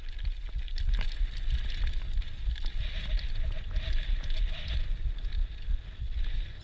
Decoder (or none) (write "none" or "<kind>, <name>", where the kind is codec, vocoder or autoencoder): none